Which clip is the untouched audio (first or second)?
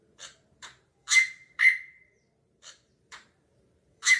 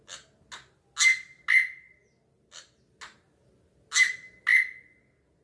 second